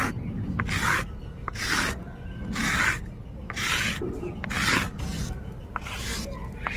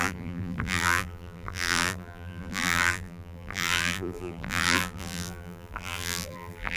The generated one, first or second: second